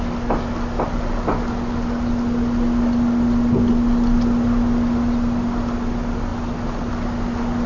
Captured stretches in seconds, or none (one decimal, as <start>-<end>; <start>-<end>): 0.0-7.7